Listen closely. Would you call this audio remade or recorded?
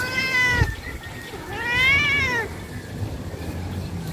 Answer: recorded